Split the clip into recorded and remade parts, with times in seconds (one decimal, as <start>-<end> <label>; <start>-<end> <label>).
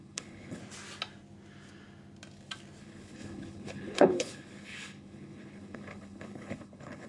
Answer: 0.0-0.6 remade; 0.6-2.8 recorded; 2.8-7.1 remade